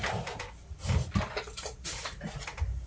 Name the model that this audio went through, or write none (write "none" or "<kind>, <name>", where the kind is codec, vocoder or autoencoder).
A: none